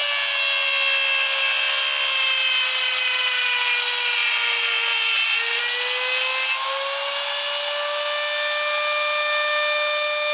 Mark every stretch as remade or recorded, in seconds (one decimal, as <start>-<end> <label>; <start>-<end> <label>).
0.0-10.3 recorded